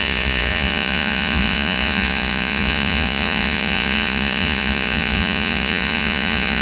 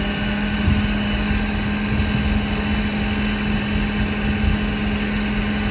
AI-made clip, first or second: first